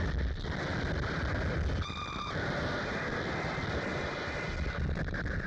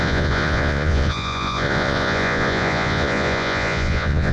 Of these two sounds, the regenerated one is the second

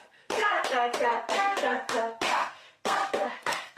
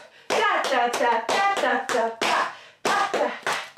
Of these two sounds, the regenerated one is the first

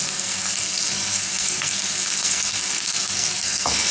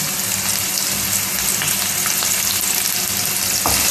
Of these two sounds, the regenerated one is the first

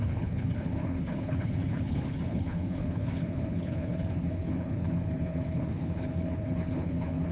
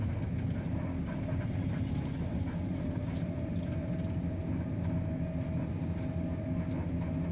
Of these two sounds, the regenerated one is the first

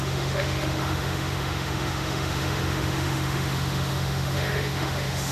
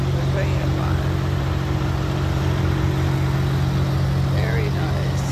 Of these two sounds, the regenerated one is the first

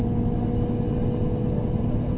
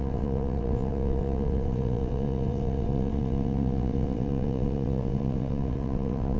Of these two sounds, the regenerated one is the second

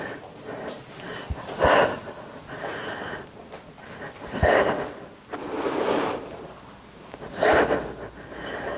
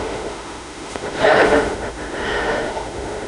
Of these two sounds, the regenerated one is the second